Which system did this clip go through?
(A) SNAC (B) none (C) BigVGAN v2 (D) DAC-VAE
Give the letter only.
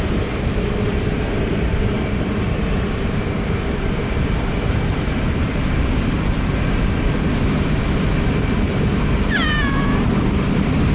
C